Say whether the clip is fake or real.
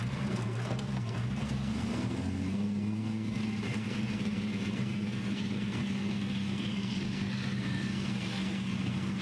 fake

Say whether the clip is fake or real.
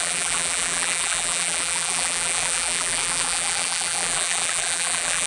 fake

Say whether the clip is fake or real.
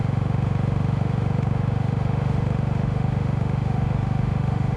fake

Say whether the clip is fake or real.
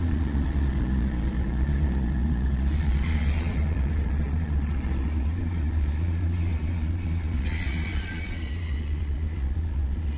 fake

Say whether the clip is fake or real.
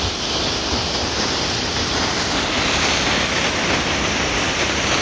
real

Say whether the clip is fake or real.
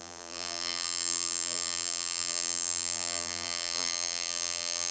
fake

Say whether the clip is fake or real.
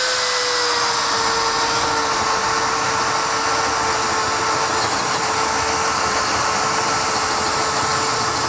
real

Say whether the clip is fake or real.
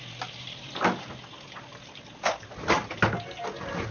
real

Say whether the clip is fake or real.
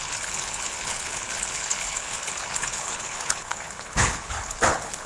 fake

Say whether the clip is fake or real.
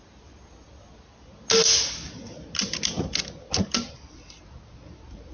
real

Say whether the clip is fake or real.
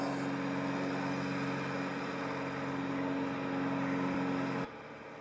real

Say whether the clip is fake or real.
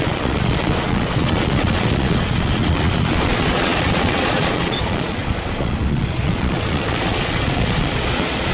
fake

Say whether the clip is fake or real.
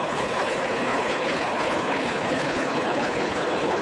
fake